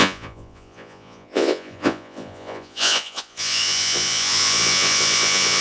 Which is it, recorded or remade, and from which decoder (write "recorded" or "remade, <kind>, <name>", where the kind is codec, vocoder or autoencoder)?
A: remade, vocoder, Vocos